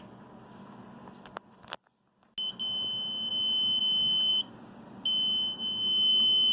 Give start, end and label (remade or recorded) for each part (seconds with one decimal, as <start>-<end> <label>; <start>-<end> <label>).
0.0-6.5 recorded